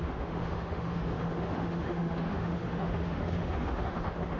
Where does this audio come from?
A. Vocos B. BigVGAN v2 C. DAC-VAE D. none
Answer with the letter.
C